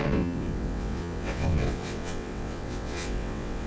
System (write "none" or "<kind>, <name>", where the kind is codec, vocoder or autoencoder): vocoder, WaveNeXt